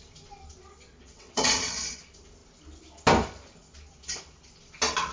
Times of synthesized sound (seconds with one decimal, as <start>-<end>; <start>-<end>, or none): 1.0-2.0